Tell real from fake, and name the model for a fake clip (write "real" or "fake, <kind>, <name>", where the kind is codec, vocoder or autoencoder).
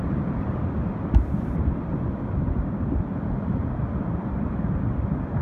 real